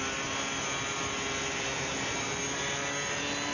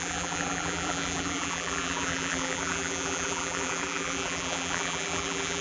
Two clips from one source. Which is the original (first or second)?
first